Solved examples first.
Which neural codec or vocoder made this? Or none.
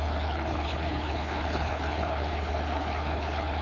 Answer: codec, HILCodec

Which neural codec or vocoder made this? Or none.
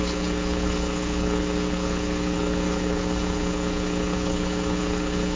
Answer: codec, HILCodec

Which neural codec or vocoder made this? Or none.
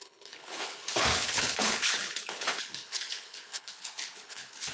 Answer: codec, HILCodec